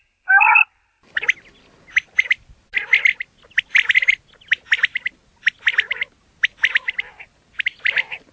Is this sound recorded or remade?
recorded